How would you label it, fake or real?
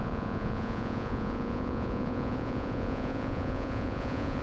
fake